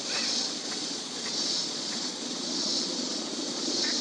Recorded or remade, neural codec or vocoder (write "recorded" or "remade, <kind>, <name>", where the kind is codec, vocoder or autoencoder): remade, vocoder, Vocos